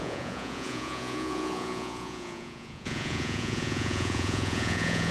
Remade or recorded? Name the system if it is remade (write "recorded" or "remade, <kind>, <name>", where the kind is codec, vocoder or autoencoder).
remade, vocoder, Vocos